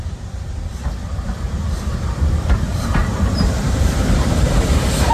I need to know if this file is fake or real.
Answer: fake